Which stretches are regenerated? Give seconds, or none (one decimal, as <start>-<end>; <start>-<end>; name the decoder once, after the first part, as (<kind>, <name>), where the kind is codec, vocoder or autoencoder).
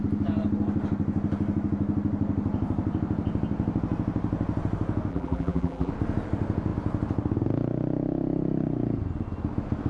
5.1-5.9 (vocoder, BigVGAN v2)